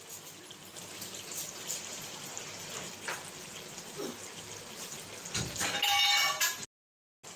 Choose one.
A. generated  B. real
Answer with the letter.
B